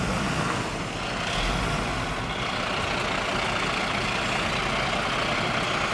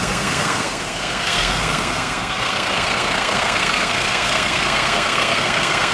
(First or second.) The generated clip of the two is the second